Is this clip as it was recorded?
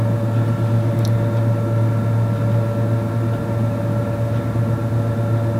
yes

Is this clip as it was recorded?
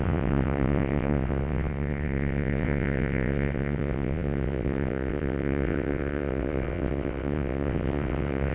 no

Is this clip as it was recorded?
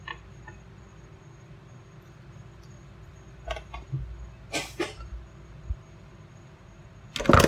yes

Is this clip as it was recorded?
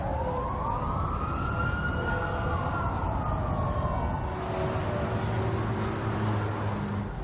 yes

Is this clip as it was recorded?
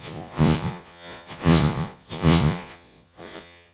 no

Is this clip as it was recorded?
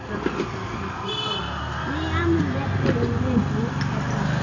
yes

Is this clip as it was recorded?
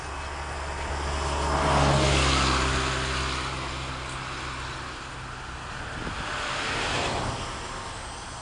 yes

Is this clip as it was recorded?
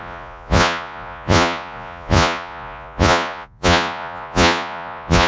no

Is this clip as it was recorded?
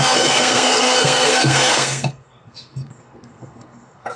no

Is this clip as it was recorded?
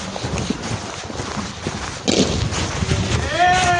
yes